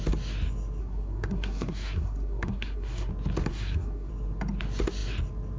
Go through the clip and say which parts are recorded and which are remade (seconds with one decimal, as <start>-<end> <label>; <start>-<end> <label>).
0.0-0.8 recorded; 0.8-3.1 remade; 3.1-3.5 recorded; 3.5-4.1 remade; 4.1-5.6 recorded